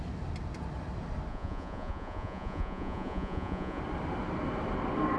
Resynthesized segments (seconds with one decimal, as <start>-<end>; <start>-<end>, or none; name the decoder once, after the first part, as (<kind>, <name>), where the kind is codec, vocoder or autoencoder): 1.3-3.8 (vocoder, Vocos)